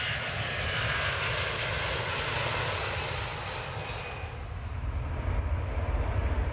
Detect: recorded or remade recorded